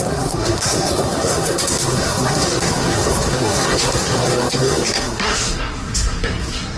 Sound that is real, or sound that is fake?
fake